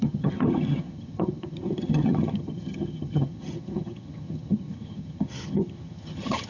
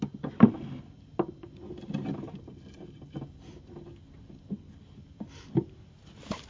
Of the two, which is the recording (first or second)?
second